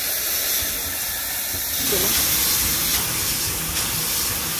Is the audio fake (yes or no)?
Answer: no